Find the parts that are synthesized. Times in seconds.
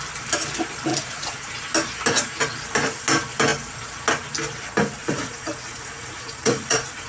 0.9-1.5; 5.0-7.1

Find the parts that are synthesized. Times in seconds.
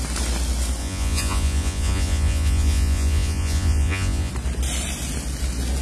0.8-4.3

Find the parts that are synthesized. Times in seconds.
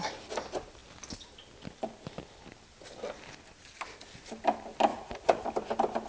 4.9-5.4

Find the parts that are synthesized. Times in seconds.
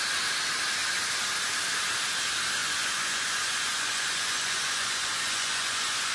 2.6-6.1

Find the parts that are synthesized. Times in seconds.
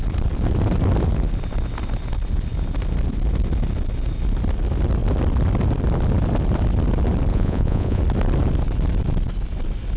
7.3-8.0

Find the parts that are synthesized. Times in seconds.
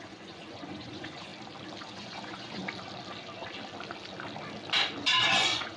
0.0-1.3; 1.8-2.6; 5.3-5.8